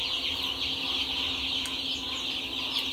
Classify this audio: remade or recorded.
recorded